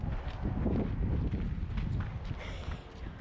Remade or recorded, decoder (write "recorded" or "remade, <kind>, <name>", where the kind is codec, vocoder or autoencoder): recorded